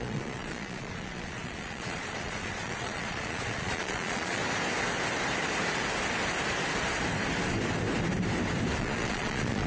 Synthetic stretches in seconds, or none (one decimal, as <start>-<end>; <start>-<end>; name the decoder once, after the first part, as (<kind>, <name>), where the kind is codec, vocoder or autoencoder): 0.0-4.4 (vocoder, Vocos); 8.8-9.7